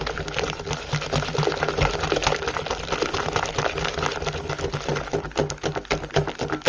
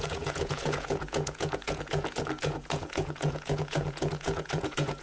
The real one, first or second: first